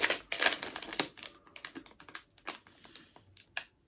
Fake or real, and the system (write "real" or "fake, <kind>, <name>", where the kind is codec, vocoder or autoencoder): real